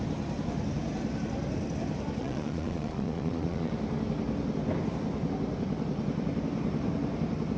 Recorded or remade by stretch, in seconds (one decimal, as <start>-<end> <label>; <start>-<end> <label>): 0.0-2.2 recorded; 2.2-3.7 remade; 3.7-7.6 recorded